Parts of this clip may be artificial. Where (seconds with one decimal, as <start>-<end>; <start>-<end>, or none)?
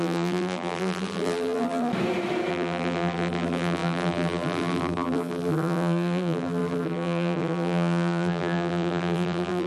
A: 0.0-1.9; 2.5-9.7